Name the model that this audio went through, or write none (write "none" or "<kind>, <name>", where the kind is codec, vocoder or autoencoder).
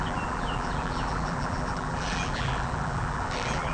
vocoder, BigVGAN v2